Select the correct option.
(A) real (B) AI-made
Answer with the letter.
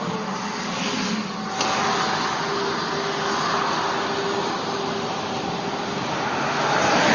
A